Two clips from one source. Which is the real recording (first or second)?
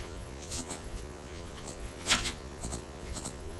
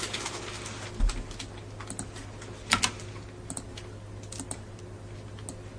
second